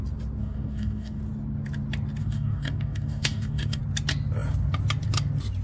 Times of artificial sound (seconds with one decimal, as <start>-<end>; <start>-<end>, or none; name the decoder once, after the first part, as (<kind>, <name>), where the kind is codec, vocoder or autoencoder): 0.4-1.2 (codec, DAC); 2.2-3.8